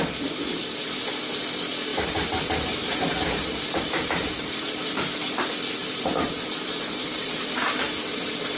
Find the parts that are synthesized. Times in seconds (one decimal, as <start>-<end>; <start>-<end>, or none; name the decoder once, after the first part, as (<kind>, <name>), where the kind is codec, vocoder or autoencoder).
1.9-5.2 (vocoder, BigVGAN v2); 5.8-8.6